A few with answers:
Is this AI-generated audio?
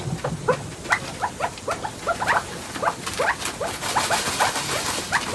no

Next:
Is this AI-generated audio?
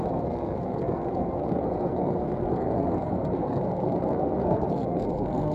yes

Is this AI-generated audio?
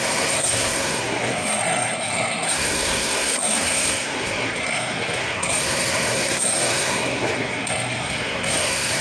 yes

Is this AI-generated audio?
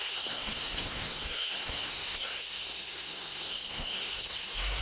yes